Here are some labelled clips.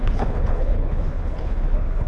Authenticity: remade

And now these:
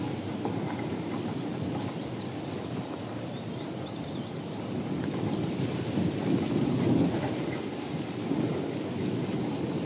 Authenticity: recorded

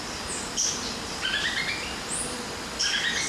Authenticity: recorded